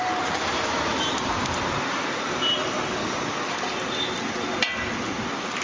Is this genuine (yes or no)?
no